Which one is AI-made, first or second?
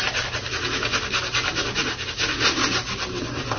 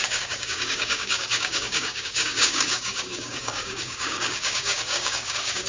second